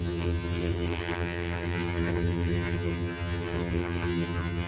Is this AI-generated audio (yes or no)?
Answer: yes